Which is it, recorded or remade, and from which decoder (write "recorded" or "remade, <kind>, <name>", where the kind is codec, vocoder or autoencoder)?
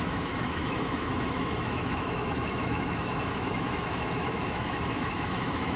remade, autoencoder, DAC-VAE